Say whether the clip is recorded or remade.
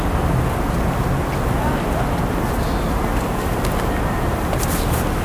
recorded